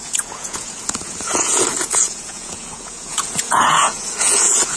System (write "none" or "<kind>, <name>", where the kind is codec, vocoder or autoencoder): vocoder, Vocos